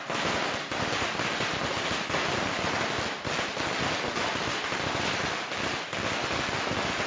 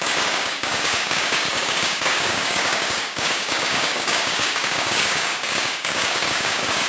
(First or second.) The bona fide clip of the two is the first